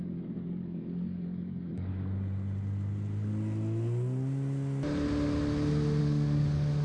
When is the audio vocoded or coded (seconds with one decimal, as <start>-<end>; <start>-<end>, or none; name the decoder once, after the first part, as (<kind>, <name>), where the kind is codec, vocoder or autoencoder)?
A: 0.0-1.9 (codec, DAC); 6.0-6.8